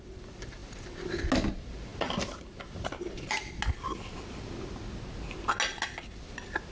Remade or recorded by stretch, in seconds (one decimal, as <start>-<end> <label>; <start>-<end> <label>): 0.0-6.7 recorded